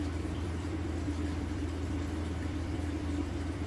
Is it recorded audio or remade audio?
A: remade